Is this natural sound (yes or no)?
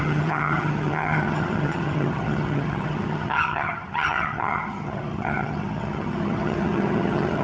no